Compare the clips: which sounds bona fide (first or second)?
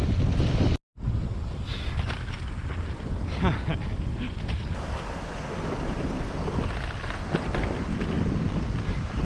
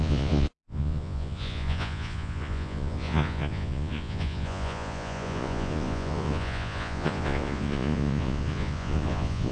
first